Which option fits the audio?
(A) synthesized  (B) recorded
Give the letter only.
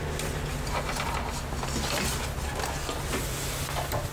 B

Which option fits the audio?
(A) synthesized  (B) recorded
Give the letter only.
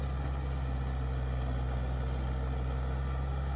B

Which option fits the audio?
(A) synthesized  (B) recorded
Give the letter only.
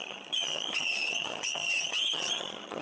A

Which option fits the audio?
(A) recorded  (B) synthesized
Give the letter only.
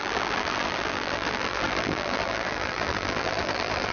B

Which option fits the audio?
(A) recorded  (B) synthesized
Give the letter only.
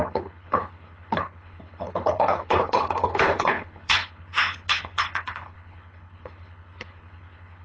B